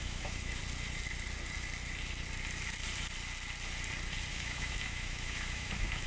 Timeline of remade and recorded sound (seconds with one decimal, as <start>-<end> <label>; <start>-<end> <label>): 0.0-0.6 remade; 0.6-4.3 recorded; 4.3-6.1 remade